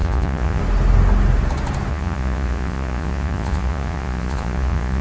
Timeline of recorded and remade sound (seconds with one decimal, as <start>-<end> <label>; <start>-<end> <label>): 0.0-0.6 remade; 0.6-1.9 recorded; 1.9-5.0 remade